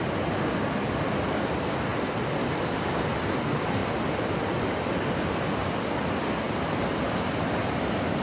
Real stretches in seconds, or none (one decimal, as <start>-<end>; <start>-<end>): 0.0-8.2